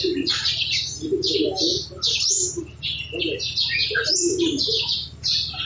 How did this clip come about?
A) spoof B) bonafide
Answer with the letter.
B